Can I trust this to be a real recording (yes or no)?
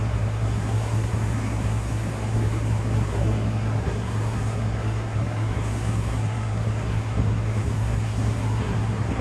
no